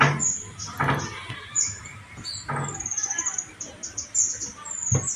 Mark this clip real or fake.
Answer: real